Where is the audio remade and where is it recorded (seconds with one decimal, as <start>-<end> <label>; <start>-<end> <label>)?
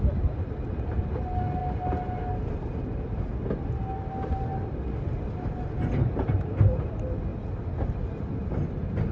0.0-9.1 recorded